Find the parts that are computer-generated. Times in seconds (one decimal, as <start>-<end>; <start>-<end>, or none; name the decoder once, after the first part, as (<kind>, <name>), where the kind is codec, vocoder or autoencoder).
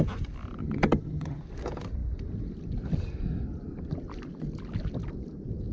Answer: 0.6-1.4 (vocoder, HiFi-GAN)